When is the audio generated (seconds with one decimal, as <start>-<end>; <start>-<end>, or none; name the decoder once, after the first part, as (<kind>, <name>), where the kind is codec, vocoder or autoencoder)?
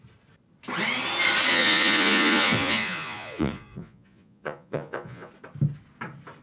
1.5-5.3 (vocoder, Vocos)